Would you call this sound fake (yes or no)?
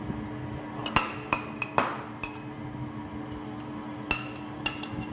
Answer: no